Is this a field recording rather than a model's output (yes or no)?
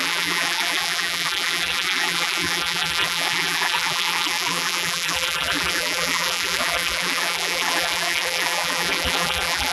no